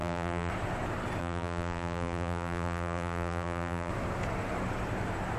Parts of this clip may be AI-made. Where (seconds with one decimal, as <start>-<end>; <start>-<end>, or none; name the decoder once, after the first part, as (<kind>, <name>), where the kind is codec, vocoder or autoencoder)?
0.0-0.5 (vocoder, BigVGAN v2); 1.2-3.9